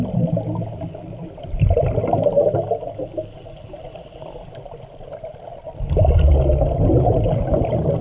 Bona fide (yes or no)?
yes